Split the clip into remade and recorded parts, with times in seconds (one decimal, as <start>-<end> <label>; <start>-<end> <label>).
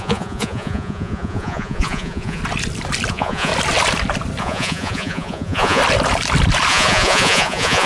0.0-2.4 remade; 2.4-3.1 recorded; 3.1-3.5 remade; 3.5-4.4 recorded; 4.4-5.8 remade; 5.8-6.7 recorded; 6.7-7.9 remade